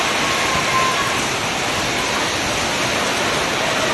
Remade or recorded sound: recorded